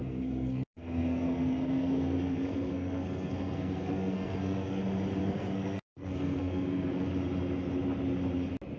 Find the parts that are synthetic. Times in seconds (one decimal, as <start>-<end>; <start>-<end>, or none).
0.0-4.8; 5.2-7.1